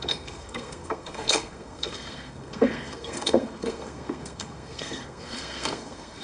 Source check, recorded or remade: remade